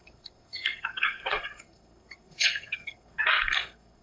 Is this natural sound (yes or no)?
no